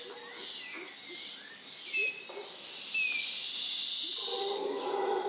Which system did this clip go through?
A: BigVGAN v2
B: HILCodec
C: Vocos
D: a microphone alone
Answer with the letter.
D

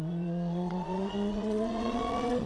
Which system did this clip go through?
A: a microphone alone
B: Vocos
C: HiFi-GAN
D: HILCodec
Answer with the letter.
B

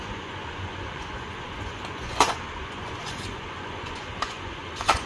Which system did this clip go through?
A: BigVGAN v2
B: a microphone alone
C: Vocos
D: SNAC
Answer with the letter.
C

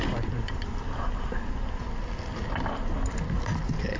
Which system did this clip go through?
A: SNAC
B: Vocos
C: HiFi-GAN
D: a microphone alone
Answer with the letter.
D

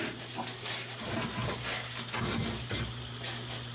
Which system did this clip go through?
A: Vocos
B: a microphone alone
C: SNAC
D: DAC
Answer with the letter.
B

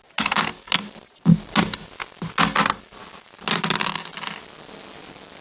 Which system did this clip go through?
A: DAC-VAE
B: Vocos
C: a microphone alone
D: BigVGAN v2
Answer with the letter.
C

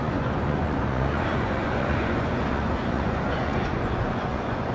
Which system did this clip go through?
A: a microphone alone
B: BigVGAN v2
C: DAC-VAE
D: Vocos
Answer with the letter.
D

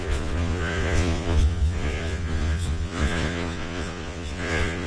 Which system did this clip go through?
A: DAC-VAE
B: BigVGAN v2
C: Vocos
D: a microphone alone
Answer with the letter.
C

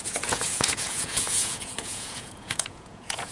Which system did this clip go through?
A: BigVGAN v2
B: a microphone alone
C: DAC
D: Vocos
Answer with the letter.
D